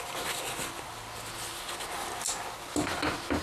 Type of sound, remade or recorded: recorded